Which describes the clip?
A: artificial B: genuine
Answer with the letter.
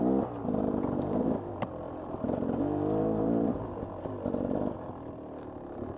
B